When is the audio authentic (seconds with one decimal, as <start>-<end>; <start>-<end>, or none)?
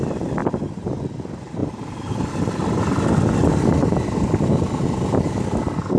0.0-6.0